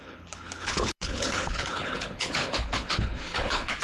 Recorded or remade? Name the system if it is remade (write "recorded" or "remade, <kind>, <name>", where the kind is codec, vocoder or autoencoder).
remade, codec, HILCodec